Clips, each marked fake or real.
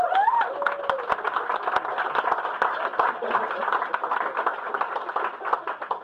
real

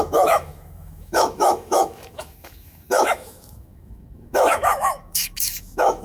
fake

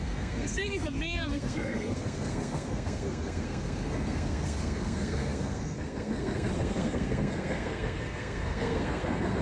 fake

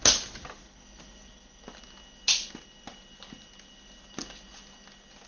real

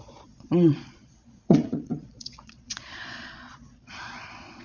fake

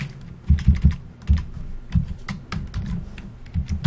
real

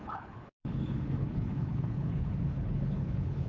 fake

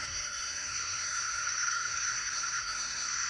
fake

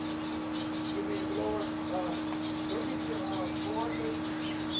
real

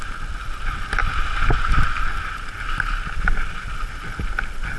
real